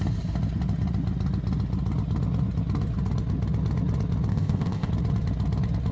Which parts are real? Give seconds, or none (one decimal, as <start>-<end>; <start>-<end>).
0.0-4.3; 4.9-5.9